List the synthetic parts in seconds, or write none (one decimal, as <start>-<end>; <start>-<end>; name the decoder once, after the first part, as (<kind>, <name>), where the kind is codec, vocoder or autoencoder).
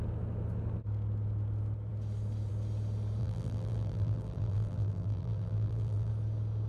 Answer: 3.2-6.1 (vocoder, BigVGAN v2)